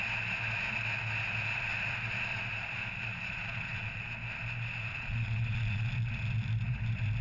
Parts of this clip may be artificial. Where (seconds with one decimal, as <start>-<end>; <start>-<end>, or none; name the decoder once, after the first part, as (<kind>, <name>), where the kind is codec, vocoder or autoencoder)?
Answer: 3.1-4.1 (vocoder, Vocos); 4.9-5.9